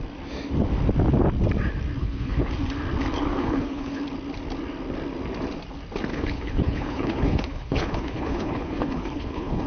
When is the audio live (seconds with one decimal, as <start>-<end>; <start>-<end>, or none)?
0.0-2.0; 2.5-3.4; 4.0-6.1